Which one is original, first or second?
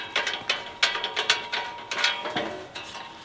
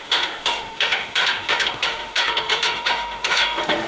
first